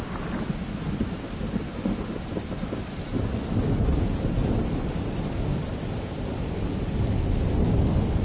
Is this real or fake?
real